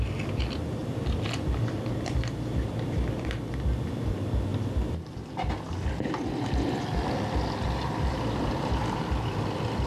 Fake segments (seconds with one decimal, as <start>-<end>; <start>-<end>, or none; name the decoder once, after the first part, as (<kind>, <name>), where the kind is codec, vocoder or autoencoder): 0.8-1.3 (vocoder, BigVGAN v2); 4.5-9.0